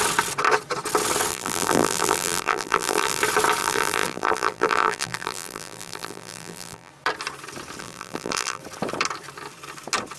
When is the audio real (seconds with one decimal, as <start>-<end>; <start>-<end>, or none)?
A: 0.0-1.3; 3.2-3.6; 6.9-7.8; 8.6-10.2